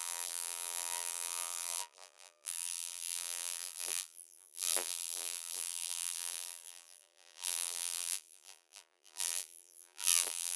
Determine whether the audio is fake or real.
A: fake